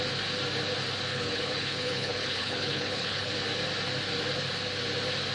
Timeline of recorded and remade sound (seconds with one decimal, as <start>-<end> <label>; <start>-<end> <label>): 0.0-1.1 recorded; 1.1-3.3 remade; 3.3-5.3 recorded